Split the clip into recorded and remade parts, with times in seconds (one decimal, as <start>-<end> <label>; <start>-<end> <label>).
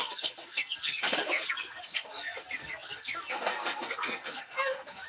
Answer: 0.0-5.1 remade